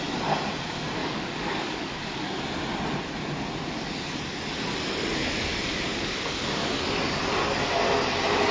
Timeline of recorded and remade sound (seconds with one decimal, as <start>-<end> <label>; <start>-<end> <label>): 0.0-1.0 recorded; 1.0-2.4 remade; 2.4-5.5 recorded; 5.5-6.7 remade; 6.7-8.5 recorded